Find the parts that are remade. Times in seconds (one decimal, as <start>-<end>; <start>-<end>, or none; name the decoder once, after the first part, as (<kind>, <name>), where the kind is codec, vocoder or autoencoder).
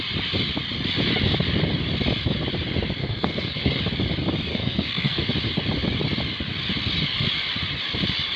3.0-3.8 (codec, SNAC); 4.5-5.2